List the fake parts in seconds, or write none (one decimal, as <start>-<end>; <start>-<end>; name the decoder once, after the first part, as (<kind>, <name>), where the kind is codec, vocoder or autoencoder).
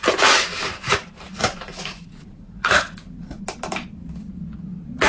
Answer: 1.4-3.4 (vocoder, Vocos)